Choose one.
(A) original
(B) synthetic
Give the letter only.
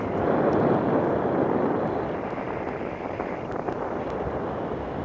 A